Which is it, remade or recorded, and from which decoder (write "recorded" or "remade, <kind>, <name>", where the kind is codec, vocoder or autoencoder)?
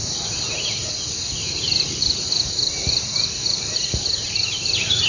remade, vocoder, BigVGAN v2